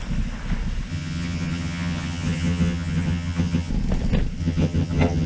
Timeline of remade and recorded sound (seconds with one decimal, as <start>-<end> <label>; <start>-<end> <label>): 0.0-0.9 recorded; 0.9-3.7 remade; 3.7-4.4 recorded; 4.4-5.3 remade